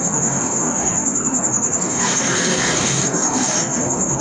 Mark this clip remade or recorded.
remade